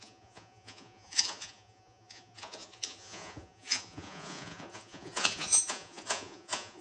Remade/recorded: remade